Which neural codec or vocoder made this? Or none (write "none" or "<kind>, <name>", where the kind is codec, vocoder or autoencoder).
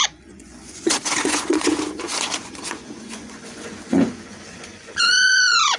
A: vocoder, Vocos